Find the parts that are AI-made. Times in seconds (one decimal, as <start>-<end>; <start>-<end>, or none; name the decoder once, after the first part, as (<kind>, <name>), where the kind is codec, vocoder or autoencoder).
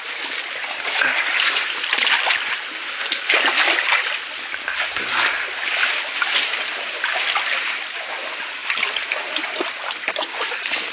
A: none